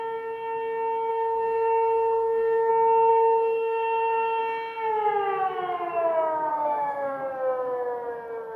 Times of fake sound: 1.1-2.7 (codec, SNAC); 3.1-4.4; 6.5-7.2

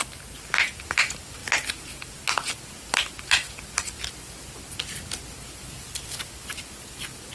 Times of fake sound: none

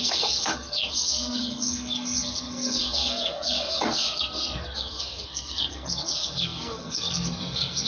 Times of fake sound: 0.0-7.9 (codec, SNAC)

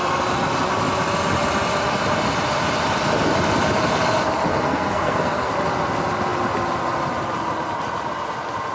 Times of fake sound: 4.5-5.5 (codec, SNAC)

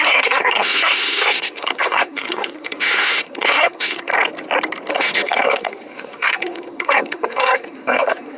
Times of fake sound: 0.0-4.1 (codec, SNAC); 4.9-8.4

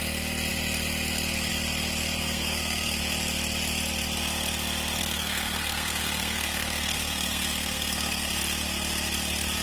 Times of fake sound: 2.2-3.0 (codec, SNAC); 5.0-8.3

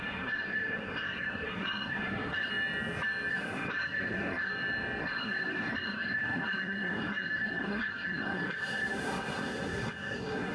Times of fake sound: 0.0-2.5 (codec, SNAC); 3.3-4.5; 5.0-10.5